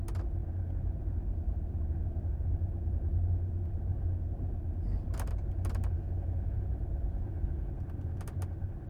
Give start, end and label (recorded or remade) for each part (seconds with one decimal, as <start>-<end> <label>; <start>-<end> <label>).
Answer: 0.0-6.0 recorded; 6.0-7.7 remade; 7.7-8.9 recorded